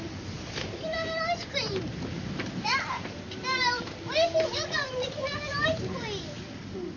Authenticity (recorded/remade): recorded